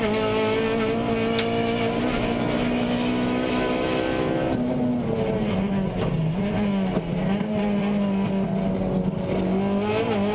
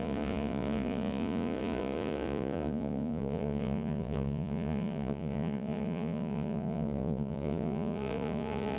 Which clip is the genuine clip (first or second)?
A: first